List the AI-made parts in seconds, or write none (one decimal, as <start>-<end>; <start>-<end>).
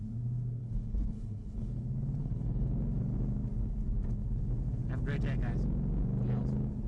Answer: 0.6-1.8; 2.2-2.7